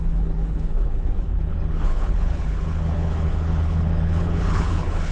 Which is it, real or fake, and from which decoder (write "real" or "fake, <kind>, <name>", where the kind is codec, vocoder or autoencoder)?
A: fake, codec, HILCodec